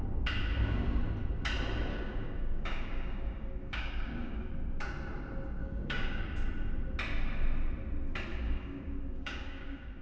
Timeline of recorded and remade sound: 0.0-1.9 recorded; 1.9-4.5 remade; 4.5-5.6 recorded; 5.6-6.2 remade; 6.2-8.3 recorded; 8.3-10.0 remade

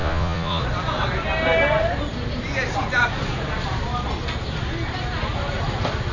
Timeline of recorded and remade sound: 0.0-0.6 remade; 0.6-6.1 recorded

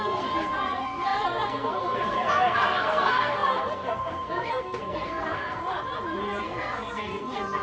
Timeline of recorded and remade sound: 0.0-5.6 remade; 5.6-6.4 recorded; 6.4-7.6 remade

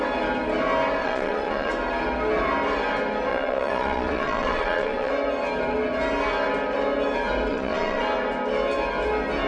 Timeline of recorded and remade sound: 0.0-1.0 recorded; 1.0-1.7 remade; 1.7-3.3 recorded; 3.3-5.1 remade; 5.1-7.5 recorded; 7.5-8.0 remade; 8.0-9.5 recorded

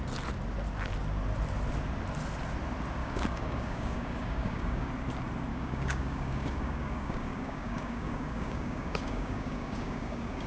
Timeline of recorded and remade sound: 0.0-3.0 recorded; 3.0-4.9 remade; 4.9-5.5 recorded; 5.5-10.5 remade